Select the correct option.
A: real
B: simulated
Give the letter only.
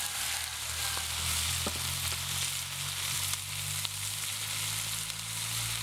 A